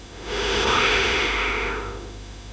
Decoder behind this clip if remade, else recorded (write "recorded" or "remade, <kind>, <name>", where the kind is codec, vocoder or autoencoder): remade, autoencoder, DAC-VAE